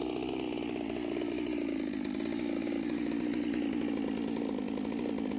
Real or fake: real